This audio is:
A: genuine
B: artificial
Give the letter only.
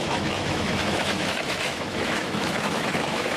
B